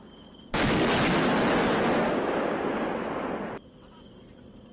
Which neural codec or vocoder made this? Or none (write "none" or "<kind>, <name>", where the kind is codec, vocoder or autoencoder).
none